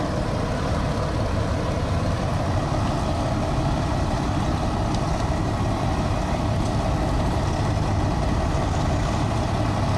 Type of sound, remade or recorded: recorded